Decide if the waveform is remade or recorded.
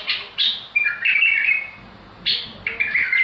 recorded